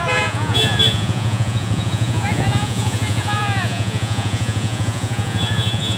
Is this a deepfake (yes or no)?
yes